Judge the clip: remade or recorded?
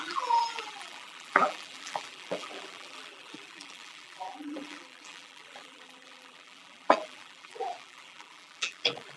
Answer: remade